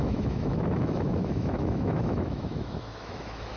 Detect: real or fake fake